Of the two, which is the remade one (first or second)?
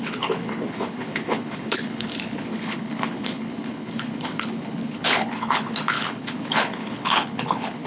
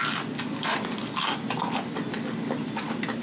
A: first